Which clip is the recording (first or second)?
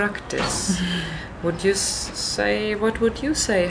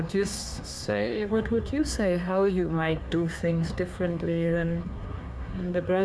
first